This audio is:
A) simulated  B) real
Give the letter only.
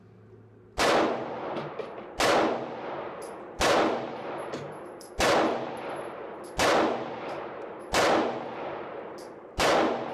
B